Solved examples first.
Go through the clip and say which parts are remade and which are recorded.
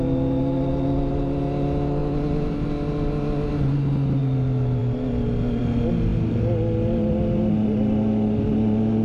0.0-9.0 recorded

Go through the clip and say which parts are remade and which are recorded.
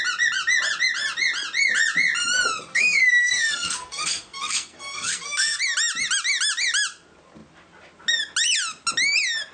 0.0-2.7 recorded; 2.7-5.6 remade; 5.6-9.5 recorded